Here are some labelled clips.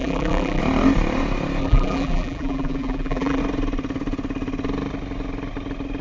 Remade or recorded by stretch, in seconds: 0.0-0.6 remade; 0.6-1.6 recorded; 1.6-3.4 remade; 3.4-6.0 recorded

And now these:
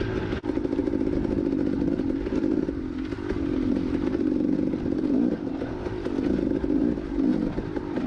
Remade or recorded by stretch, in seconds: 0.0-0.8 recorded; 0.8-5.7 remade; 5.7-7.3 recorded; 7.3-8.1 remade

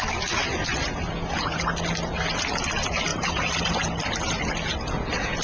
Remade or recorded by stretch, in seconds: 0.0-3.1 recorded; 3.1-3.7 remade; 3.7-5.4 recorded

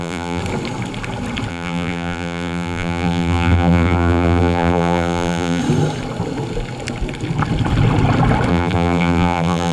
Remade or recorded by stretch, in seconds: 0.0-0.4 remade; 0.4-1.5 recorded; 1.5-5.6 remade; 5.6-8.5 recorded; 8.5-9.7 remade